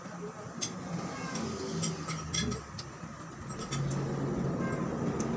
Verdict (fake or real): real